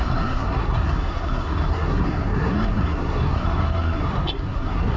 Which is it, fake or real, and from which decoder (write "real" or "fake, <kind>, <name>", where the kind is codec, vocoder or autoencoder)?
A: fake, codec, SNAC